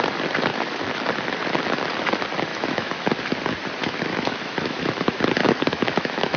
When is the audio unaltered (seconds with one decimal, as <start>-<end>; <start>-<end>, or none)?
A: 0.0-0.5; 1.0-2.5; 3.1-3.8; 5.0-5.4